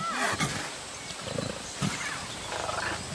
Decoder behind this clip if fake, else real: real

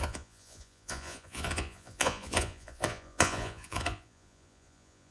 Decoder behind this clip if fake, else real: fake, vocoder, Vocos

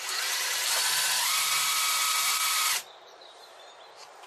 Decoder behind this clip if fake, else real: fake, vocoder, BigVGAN v2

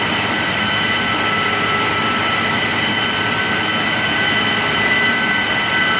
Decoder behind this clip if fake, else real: real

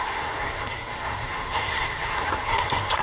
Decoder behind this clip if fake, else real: fake, codec, SNAC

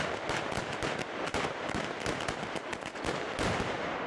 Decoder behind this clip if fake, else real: real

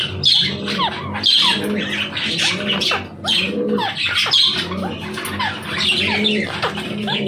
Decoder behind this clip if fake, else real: real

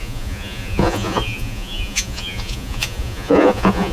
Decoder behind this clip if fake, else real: fake, vocoder, Vocos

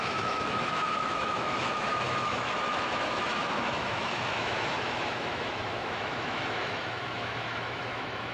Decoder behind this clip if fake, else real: fake, autoencoder, DAC-VAE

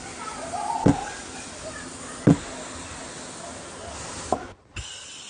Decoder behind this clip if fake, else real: real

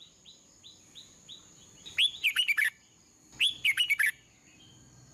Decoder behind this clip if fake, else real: real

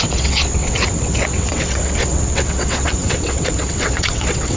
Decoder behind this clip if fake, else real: fake, vocoder, WaveNeXt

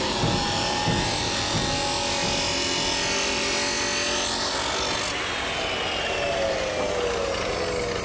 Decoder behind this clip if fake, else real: real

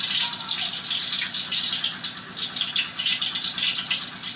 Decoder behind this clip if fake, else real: real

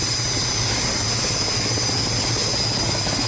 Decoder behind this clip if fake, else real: real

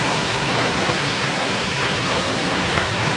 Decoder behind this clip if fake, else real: fake, codec, SNAC